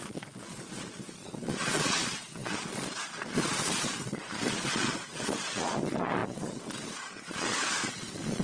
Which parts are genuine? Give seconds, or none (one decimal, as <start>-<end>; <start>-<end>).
none